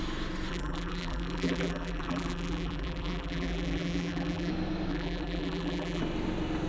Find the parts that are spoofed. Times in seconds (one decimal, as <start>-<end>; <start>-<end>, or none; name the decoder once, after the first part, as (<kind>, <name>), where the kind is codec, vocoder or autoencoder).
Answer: 0.5-4.5 (vocoder, BigVGAN v2); 4.9-6.0